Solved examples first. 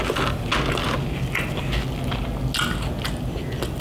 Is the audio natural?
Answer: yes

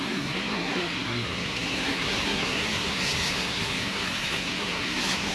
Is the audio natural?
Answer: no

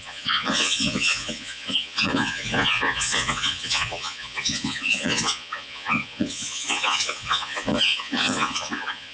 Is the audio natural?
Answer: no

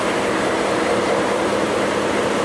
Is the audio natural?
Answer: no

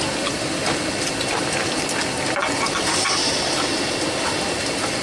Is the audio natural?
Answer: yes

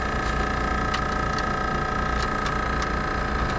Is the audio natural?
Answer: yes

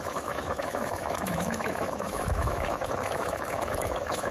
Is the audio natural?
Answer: no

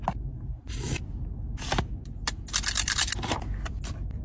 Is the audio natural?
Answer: yes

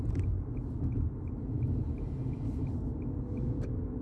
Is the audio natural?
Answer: yes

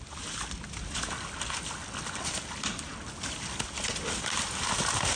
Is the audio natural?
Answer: yes